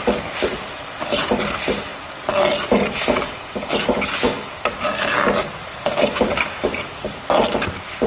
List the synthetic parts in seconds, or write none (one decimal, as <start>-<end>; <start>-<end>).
5.4-7.0